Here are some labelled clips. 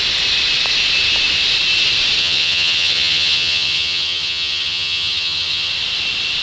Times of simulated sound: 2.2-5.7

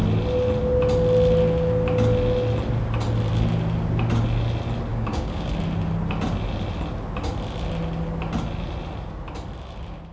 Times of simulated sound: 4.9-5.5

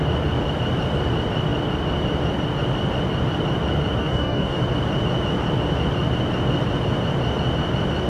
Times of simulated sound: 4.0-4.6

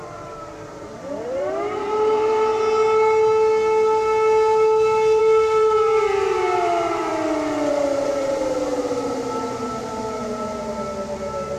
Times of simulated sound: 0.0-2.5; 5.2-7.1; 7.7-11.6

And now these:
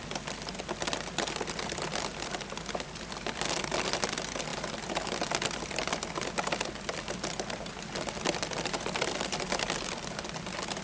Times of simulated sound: none